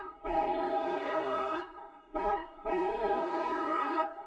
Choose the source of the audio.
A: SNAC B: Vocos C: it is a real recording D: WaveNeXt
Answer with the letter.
A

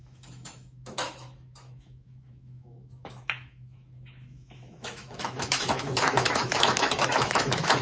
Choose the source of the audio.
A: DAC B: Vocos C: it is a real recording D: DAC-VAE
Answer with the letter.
D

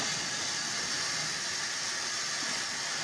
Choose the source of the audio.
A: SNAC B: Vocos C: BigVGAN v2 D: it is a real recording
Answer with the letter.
D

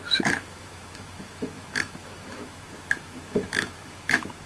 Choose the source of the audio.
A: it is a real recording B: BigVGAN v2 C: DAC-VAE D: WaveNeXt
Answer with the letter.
C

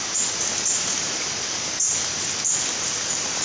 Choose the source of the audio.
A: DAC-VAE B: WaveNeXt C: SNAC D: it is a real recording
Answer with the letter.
D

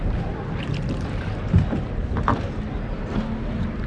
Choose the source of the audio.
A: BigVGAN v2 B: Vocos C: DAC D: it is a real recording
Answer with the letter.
D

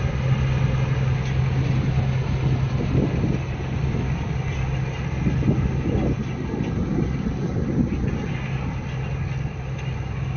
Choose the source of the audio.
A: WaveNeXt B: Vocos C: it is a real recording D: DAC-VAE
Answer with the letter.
C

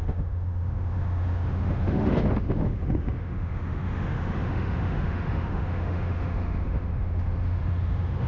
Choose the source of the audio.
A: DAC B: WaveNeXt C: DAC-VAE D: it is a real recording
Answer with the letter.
C